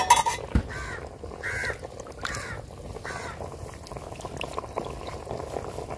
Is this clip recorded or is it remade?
recorded